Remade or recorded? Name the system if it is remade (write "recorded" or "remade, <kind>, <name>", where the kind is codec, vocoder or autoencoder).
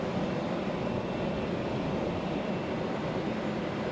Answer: remade, vocoder, BigVGAN v2